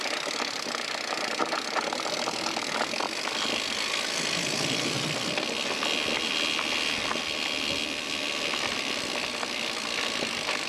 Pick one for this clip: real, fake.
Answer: real